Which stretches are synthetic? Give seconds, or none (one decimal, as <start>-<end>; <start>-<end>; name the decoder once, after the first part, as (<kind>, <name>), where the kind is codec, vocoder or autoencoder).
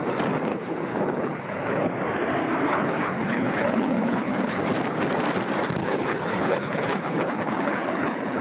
0.5-1.9 (codec, HILCodec); 2.7-4.6; 5.8-8.4